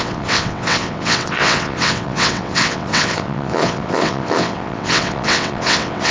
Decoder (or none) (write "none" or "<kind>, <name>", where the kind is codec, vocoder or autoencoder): vocoder, WaveNeXt